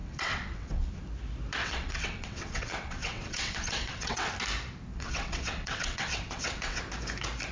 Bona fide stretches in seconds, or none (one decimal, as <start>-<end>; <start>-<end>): 0.9-1.6; 4.3-4.9; 6.8-7.5